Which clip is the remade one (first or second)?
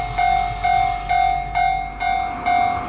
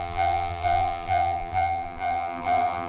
second